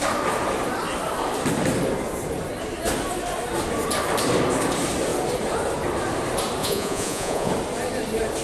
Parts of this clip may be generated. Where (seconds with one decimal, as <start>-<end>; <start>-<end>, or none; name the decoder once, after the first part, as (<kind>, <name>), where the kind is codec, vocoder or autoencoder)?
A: 6.6-7.5 (vocoder, Vocos)